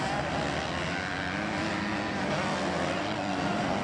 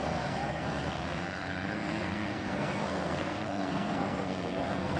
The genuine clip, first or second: first